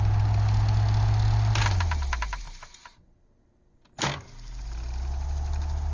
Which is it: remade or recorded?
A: recorded